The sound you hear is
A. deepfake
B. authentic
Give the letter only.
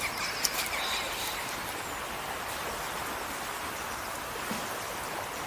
B